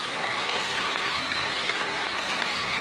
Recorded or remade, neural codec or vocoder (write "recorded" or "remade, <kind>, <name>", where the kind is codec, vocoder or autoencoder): remade, codec, SNAC